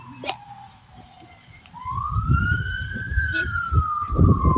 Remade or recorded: remade